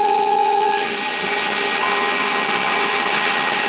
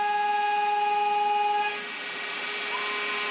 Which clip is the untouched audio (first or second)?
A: second